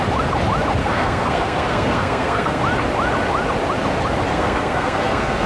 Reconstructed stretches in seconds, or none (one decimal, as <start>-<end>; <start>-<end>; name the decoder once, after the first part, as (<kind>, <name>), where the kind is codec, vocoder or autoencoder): 0.8-2.6 (codec, SNAC); 4.3-5.5